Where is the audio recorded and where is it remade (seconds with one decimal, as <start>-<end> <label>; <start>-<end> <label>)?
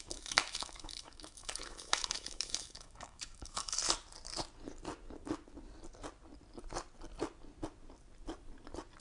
0.0-3.8 remade; 3.8-9.0 recorded